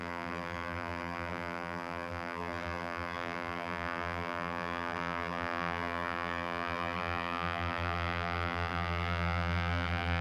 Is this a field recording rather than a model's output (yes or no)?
no